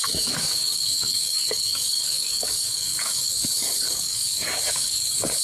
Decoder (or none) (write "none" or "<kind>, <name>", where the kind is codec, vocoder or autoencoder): codec, DAC